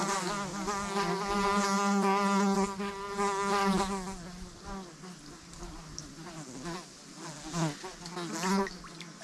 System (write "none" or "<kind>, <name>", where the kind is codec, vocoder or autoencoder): none